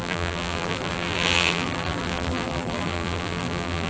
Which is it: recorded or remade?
remade